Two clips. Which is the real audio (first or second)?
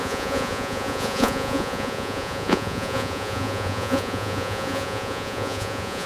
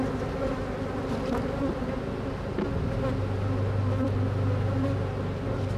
second